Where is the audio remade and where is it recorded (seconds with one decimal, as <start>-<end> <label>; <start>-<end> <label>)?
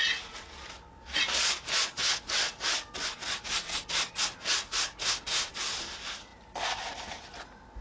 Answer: 0.0-5.0 recorded; 5.0-5.5 remade; 5.5-7.8 recorded